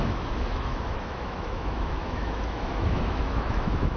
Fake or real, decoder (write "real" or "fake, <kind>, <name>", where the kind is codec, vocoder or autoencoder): fake, autoencoder, DAC-VAE